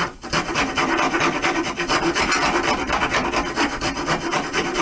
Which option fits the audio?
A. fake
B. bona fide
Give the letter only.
A